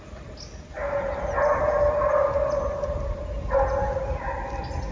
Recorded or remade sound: recorded